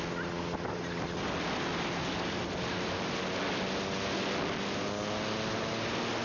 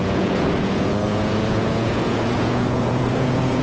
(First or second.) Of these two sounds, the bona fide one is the first